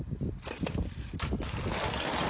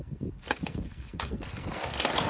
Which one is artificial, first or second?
second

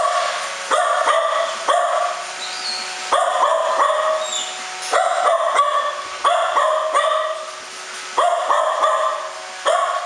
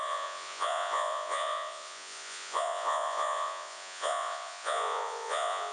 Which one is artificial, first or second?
second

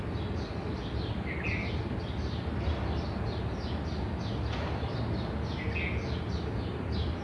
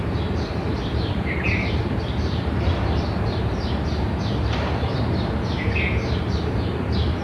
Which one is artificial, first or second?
second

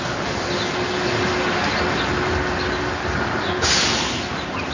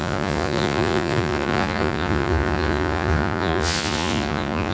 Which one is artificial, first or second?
second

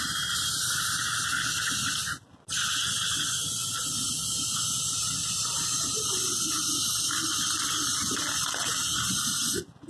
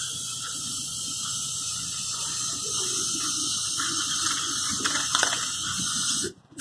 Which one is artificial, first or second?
second